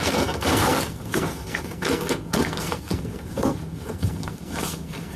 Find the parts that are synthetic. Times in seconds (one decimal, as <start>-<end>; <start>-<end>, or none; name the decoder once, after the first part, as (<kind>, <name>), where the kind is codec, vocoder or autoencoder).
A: 0.0-5.2 (codec, SNAC)